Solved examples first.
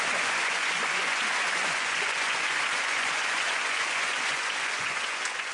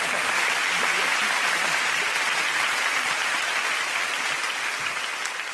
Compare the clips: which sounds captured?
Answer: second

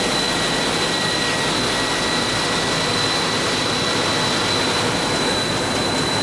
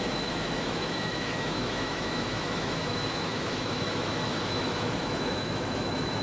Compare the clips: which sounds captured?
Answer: first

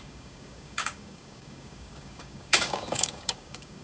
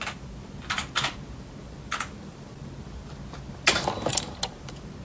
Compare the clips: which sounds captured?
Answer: second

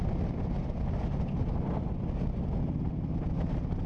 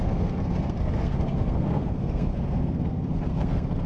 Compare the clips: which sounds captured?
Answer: first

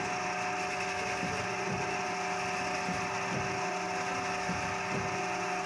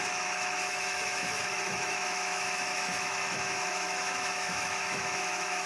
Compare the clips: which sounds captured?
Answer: first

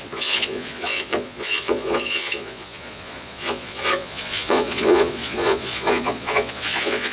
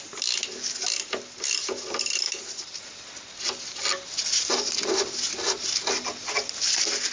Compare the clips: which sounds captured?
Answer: second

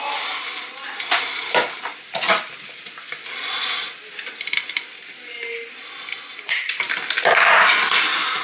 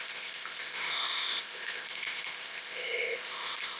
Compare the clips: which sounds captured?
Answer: first